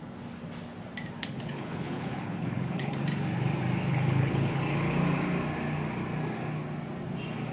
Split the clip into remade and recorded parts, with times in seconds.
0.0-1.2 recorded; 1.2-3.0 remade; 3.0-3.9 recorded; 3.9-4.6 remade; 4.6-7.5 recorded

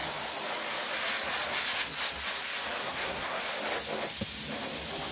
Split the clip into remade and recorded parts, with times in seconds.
0.0-2.8 recorded; 2.8-3.4 remade; 3.4-5.1 recorded

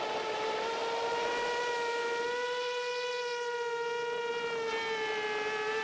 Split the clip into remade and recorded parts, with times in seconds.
0.0-5.8 recorded

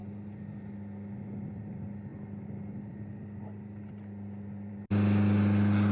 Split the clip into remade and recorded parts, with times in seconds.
0.0-5.9 recorded

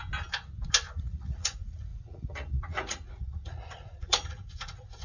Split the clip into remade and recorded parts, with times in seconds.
0.0-0.9 recorded; 0.9-5.0 remade

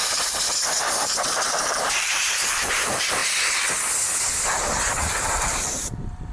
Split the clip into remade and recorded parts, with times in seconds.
0.0-1.2 recorded; 1.2-3.2 remade; 3.2-4.9 recorded; 4.9-6.3 remade

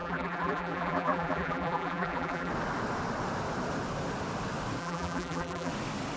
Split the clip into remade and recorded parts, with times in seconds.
0.0-2.5 remade; 2.5-4.8 recorded; 4.8-5.7 remade; 5.7-6.2 recorded

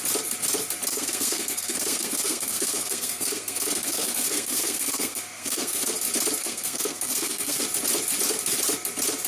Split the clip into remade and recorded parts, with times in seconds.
0.0-0.9 recorded; 0.9-5.9 remade; 5.9-6.4 recorded; 6.4-7.6 remade; 7.6-9.3 recorded